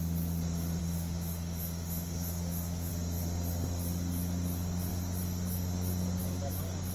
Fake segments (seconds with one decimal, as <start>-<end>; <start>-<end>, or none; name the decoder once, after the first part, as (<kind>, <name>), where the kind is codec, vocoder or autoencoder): 0.8-2.9 (autoencoder, DAC-VAE)